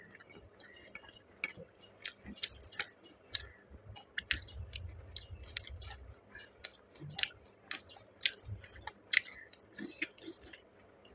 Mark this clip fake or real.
real